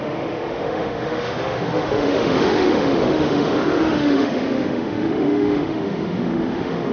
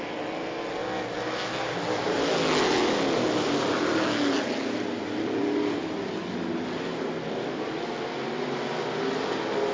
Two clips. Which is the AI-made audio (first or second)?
first